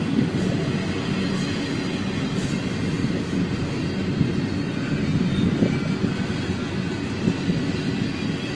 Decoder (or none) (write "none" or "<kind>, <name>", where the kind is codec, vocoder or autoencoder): none